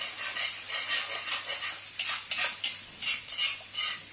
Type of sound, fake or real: real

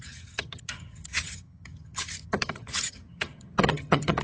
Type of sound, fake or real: fake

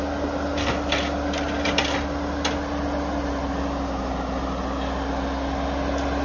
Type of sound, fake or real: real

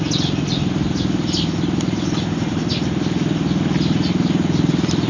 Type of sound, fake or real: real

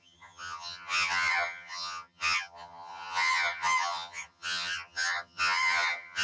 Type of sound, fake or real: fake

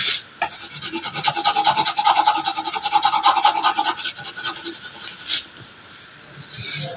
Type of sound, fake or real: real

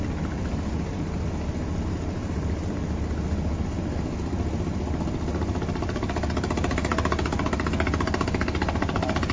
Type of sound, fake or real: real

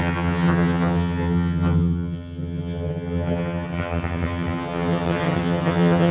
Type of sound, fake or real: fake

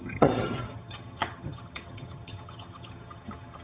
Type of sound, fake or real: fake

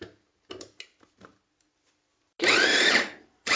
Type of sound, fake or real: real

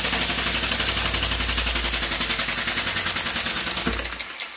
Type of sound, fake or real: real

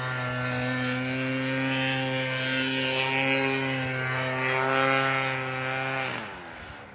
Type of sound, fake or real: real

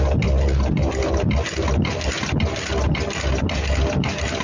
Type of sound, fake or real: real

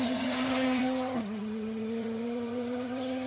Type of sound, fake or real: fake